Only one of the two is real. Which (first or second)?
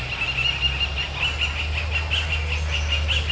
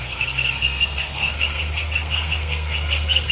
first